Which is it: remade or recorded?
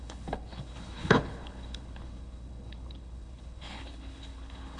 remade